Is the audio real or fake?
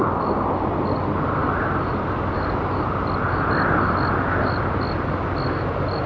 real